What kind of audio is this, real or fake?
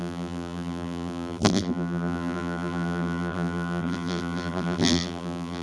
fake